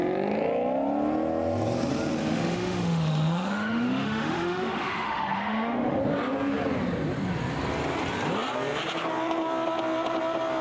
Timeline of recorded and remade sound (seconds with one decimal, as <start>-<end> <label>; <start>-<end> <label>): 0.0-2.2 recorded; 2.2-6.0 remade; 6.0-10.6 recorded